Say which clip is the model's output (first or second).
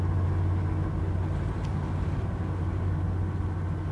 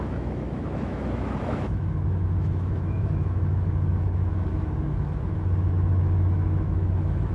second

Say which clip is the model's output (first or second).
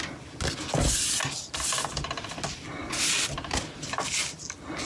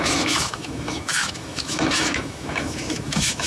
second